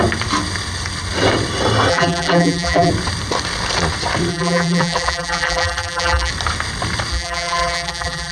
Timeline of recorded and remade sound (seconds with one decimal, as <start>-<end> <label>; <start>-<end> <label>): 0.0-1.9 recorded; 1.9-2.9 remade; 2.9-4.3 recorded; 4.3-6.3 remade; 6.3-7.1 recorded; 7.1-8.3 remade